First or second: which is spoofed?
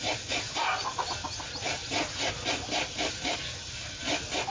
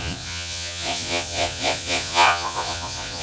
second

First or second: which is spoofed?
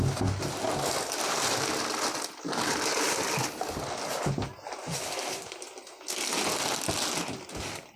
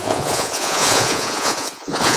second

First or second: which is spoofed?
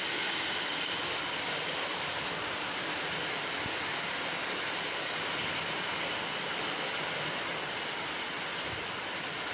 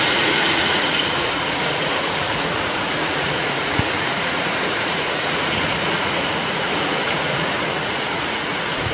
second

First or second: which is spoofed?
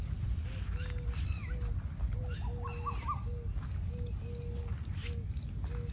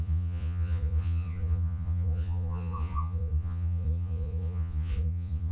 second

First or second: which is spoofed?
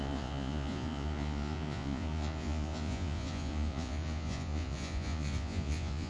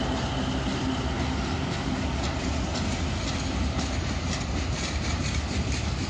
first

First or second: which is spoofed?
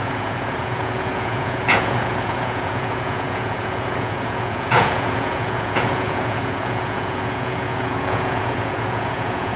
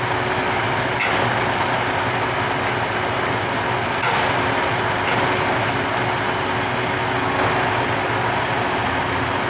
first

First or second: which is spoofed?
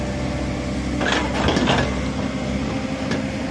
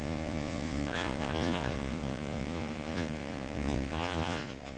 second